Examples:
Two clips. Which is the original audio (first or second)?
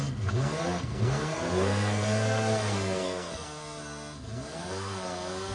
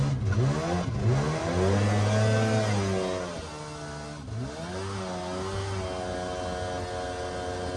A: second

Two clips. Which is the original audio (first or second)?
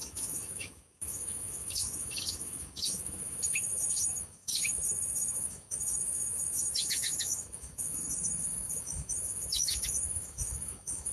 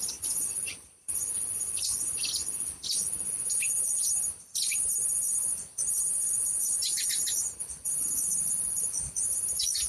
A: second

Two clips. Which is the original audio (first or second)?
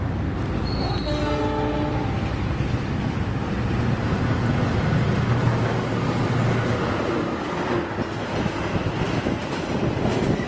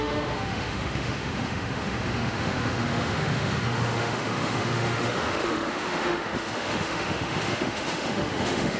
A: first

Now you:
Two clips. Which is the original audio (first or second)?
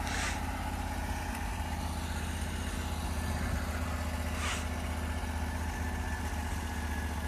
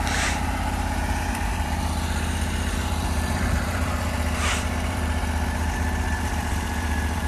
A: first